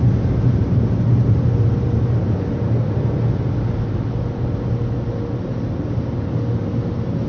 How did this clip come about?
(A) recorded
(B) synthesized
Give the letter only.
A